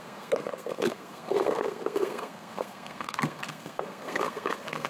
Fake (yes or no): yes